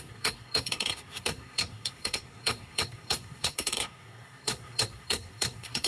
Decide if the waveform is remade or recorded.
remade